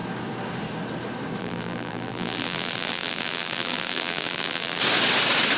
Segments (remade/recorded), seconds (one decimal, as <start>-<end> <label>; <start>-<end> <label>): 0.0-1.4 recorded; 1.4-4.8 remade; 4.8-5.6 recorded